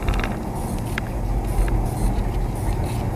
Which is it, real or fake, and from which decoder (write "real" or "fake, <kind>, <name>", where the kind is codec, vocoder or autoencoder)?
real